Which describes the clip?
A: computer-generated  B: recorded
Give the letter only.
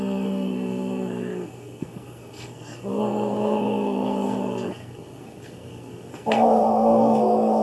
A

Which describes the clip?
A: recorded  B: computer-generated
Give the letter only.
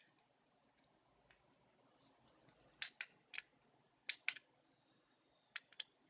A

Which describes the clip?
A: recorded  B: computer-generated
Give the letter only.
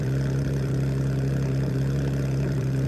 B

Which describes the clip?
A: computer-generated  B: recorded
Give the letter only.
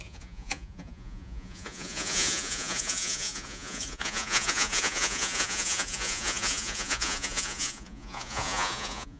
A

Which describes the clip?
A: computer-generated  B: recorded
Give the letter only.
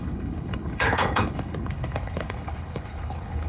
A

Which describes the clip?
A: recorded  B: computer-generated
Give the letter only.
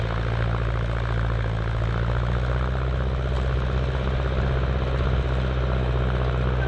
A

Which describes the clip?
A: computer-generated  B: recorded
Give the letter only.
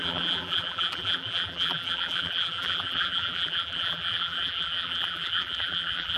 A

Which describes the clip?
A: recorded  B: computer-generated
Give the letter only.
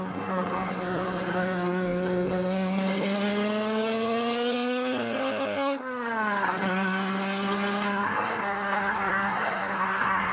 B